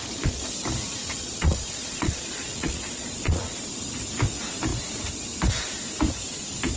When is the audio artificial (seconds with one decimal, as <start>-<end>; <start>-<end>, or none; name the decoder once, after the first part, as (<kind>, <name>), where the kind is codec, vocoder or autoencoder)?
0.0-0.6 (vocoder, Vocos); 1.0-3.7